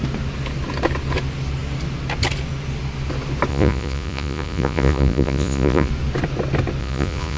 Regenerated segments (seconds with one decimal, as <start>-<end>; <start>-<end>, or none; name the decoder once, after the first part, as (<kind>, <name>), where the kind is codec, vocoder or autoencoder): 3.5-5.9 (vocoder, Vocos); 6.8-7.4

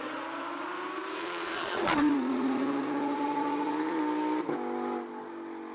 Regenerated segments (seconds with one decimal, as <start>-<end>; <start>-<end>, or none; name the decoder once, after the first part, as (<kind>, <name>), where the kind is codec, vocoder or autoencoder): 1.2-4.0 (vocoder, Vocos)

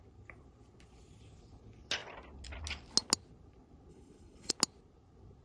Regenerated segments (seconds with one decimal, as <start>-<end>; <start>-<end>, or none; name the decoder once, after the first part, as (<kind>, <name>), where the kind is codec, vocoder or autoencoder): 3.9-4.5 (codec, HILCodec)

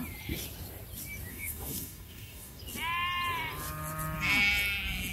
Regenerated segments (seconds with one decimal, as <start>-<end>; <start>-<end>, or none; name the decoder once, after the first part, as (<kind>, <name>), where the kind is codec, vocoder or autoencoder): 1.3-2.6 (codec, DAC)

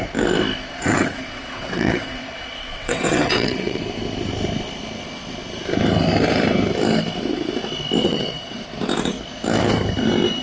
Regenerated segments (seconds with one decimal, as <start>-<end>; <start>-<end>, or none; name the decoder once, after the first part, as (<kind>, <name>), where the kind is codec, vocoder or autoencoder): 0.7-3.8 (vocoder, WaveNeXt); 8.0-8.6